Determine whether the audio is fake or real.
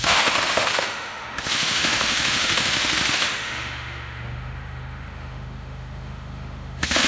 fake